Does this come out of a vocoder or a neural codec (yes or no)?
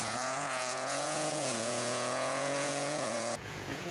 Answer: yes